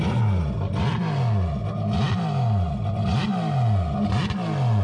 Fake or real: real